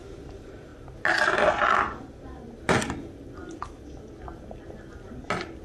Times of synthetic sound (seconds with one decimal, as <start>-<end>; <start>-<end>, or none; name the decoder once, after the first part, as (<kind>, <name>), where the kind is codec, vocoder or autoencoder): none